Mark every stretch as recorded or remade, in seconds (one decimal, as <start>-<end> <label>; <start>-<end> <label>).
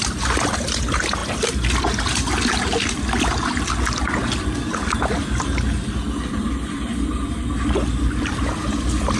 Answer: 0.0-9.2 recorded